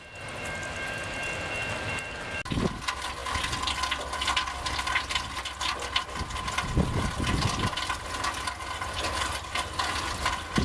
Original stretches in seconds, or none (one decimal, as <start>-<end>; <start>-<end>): 0.0-10.6